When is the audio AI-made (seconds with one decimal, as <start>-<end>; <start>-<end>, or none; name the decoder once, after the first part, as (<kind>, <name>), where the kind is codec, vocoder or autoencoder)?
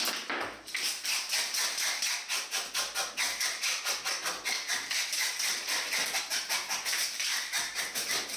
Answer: 6.9-8.4 (vocoder, BigVGAN v2)